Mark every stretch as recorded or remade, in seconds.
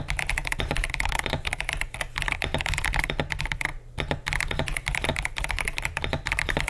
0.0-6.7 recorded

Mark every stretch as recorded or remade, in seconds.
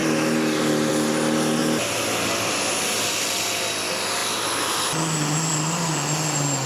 0.0-6.7 recorded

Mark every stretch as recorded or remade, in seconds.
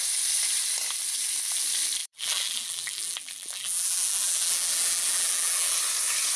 0.0-2.0 recorded; 2.0-5.8 remade; 5.8-6.4 recorded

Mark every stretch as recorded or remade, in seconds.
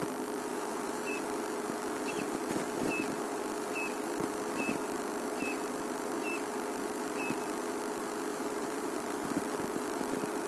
0.0-0.5 recorded; 0.5-1.2 remade; 1.2-8.3 recorded; 8.3-9.4 remade; 9.4-10.5 recorded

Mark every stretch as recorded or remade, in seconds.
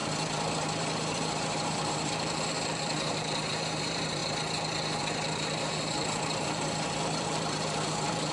0.0-4.2 remade; 4.2-5.0 recorded; 5.0-8.3 remade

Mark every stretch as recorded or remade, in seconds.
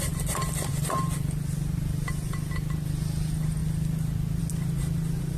0.0-5.4 recorded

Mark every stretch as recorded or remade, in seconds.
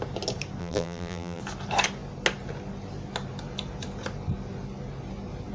0.0-0.6 recorded; 0.6-1.4 remade; 1.4-5.5 recorded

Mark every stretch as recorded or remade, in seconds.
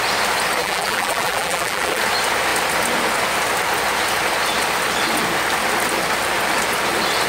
0.0-0.6 recorded; 0.6-2.0 remade; 2.0-7.3 recorded